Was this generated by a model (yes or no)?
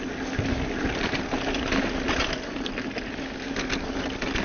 no